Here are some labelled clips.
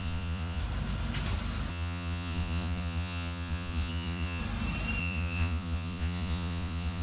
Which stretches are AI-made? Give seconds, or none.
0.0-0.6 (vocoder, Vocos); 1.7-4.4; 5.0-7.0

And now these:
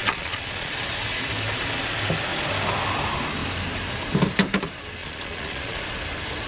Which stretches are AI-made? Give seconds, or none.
0.0-0.7 (vocoder, Vocos); 5.0-5.8

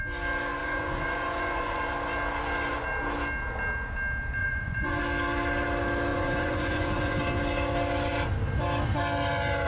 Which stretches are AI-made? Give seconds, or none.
0.6-1.8 (vocoder, Vocos); 4.4-5.0; 6.1-7.2